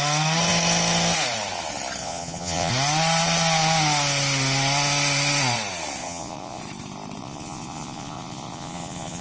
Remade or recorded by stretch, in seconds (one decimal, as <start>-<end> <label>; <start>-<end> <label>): 0.0-2.0 recorded; 2.0-2.7 remade; 2.7-6.0 recorded; 6.0-6.6 remade; 6.6-7.2 recorded; 7.2-9.2 remade